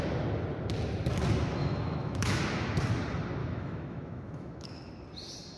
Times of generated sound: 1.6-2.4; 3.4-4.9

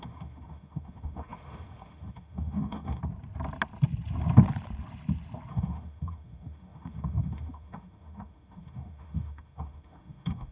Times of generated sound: 0.0-3.0; 5.5-10.5

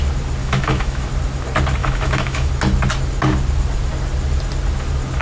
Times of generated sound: 0.4-1.1; 1.8-2.5

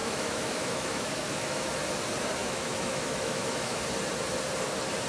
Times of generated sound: 0.0-1.7; 2.4-3.8